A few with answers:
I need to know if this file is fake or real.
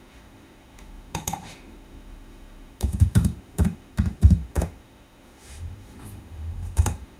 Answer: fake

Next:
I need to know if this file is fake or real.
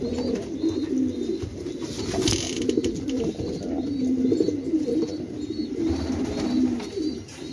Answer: real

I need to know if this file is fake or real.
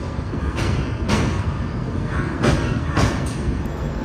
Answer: fake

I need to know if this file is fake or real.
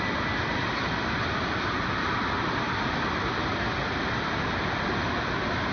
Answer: real